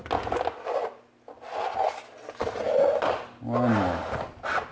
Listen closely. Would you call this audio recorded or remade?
recorded